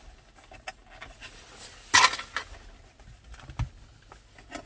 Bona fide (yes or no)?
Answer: yes